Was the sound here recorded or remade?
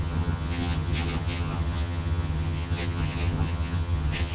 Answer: remade